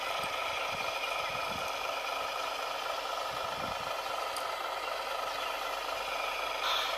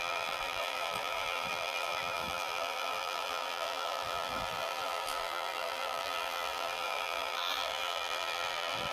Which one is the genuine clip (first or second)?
first